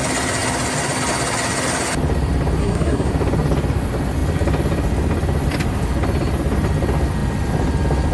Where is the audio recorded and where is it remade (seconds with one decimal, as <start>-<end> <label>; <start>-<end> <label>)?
0.0-2.6 recorded; 2.6-3.1 remade; 3.1-8.1 recorded